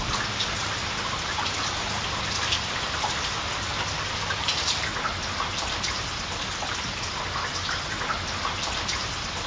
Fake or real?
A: real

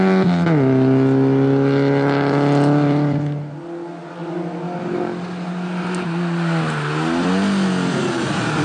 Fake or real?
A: real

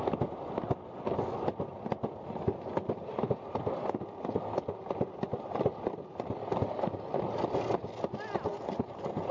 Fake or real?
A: real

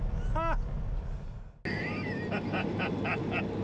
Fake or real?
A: real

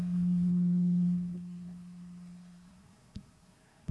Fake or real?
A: fake